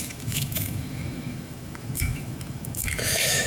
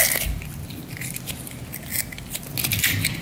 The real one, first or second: second